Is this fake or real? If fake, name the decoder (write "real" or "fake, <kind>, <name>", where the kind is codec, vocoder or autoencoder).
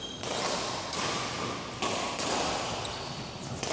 fake, vocoder, BigVGAN v2